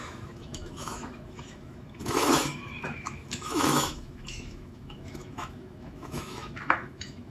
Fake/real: fake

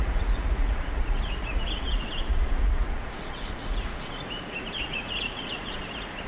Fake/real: fake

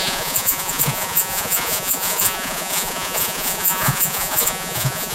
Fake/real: fake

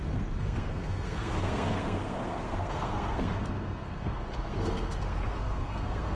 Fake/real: fake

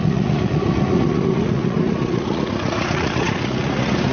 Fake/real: fake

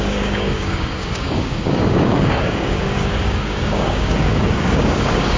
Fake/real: fake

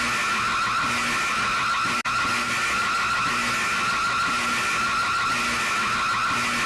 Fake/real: real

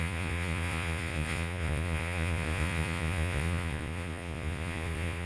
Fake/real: fake